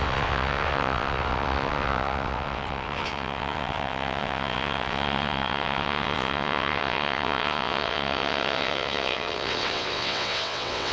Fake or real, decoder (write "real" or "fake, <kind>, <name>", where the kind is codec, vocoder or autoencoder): fake, vocoder, WaveNeXt